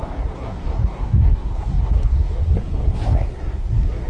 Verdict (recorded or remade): remade